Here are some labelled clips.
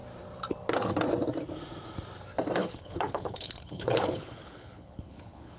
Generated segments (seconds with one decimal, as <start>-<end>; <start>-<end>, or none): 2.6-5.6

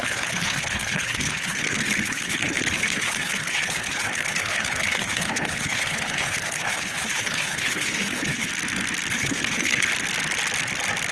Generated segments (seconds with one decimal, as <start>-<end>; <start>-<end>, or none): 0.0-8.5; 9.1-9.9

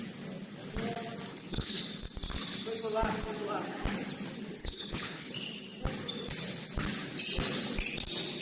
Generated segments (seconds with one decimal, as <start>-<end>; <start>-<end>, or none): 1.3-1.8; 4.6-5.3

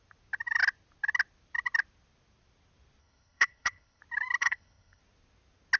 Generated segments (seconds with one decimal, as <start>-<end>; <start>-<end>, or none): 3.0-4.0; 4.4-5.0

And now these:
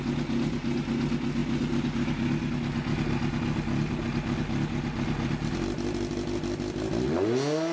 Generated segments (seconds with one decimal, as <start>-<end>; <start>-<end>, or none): none